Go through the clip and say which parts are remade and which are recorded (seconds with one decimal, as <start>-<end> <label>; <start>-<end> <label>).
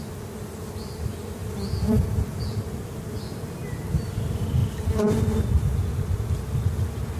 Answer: 0.0-7.2 recorded